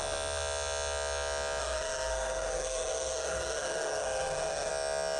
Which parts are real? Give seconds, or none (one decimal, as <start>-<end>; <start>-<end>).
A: 0.0-1.6; 4.7-5.2